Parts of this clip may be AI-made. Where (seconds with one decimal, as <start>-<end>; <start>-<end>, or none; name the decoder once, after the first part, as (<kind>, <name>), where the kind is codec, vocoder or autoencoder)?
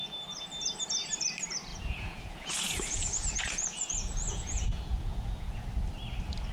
1.7-5.6 (vocoder, Vocos)